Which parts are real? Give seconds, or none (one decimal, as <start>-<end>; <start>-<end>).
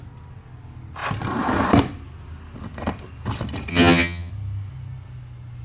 0.0-3.7; 4.3-5.6